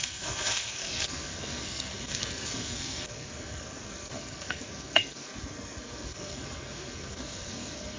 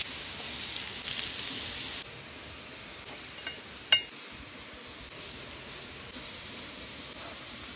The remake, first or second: first